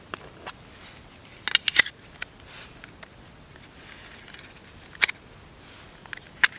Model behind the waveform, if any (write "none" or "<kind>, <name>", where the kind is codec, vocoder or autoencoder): none